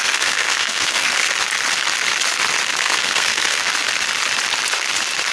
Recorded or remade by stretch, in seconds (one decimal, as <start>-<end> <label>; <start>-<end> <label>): 0.0-1.3 remade; 1.3-2.7 recorded; 2.7-3.7 remade; 3.7-5.3 recorded